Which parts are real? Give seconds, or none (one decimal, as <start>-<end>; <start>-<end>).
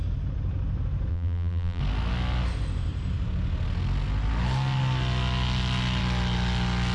0.0-1.1; 1.8-6.9